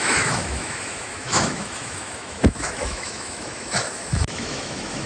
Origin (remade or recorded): remade